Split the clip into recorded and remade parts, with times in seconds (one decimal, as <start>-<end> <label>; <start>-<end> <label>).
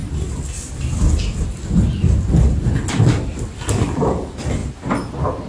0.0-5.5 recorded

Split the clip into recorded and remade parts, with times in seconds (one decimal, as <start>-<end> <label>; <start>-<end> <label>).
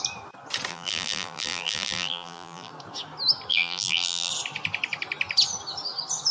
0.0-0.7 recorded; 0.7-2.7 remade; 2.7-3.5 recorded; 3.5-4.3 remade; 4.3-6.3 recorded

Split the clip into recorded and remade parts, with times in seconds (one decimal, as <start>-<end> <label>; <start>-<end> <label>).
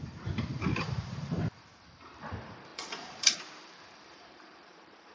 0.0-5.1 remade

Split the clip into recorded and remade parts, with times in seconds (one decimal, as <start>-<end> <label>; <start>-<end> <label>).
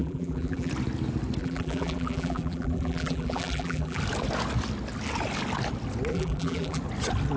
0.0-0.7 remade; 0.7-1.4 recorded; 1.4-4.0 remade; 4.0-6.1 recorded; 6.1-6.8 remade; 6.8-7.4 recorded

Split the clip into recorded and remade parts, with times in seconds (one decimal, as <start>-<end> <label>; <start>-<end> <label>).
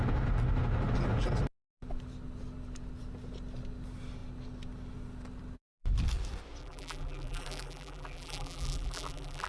0.0-6.6 recorded; 6.6-9.5 remade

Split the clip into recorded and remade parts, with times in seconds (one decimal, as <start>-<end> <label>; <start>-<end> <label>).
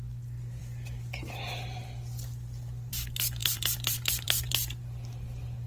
0.0-3.4 recorded; 3.4-4.5 remade; 4.5-5.7 recorded